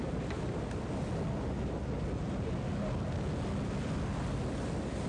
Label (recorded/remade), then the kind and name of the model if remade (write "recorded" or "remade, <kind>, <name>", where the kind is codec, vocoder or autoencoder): recorded